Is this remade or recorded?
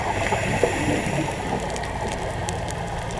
recorded